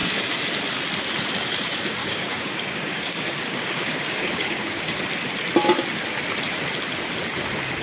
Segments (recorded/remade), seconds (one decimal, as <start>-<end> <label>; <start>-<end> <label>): 0.0-2.0 recorded; 2.0-5.0 remade; 5.0-7.8 recorded